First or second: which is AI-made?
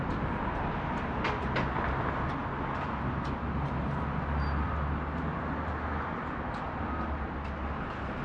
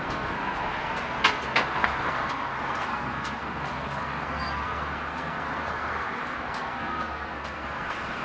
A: second